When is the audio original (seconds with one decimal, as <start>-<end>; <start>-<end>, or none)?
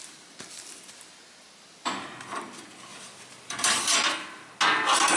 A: 0.0-5.2